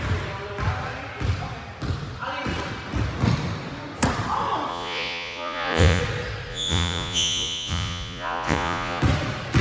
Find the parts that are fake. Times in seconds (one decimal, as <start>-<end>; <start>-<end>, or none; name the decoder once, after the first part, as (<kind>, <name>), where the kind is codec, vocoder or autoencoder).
4.7-6.0 (vocoder, Vocos); 6.5-9.0